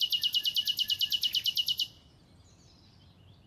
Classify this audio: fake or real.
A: real